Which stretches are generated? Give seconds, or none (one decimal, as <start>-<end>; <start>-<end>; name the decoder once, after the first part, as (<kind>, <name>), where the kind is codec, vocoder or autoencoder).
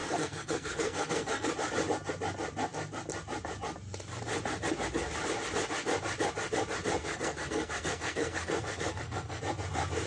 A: 0.0-1.5 (codec, SNAC); 7.0-9.4